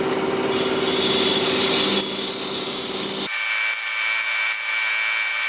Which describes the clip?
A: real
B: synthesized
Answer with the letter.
A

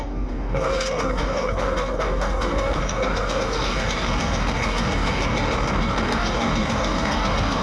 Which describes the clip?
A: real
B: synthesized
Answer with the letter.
B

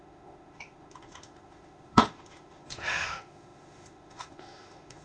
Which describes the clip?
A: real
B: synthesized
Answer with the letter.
B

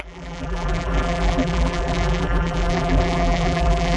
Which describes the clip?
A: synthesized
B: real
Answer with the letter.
A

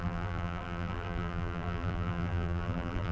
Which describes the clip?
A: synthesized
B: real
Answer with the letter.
A